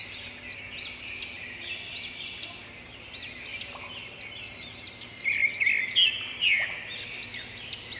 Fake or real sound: real